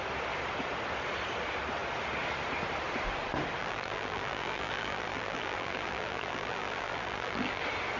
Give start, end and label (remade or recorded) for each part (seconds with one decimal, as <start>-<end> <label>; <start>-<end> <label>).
0.0-3.6 recorded; 3.6-7.6 remade; 7.6-8.0 recorded